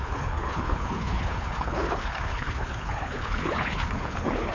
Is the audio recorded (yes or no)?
no